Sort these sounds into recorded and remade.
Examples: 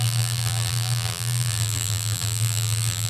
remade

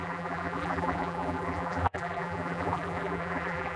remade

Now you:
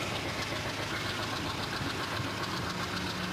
recorded